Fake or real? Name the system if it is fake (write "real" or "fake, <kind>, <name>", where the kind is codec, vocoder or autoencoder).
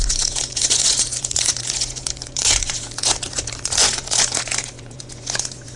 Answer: fake, vocoder, Vocos